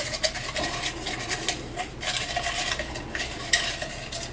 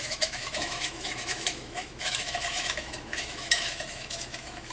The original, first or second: first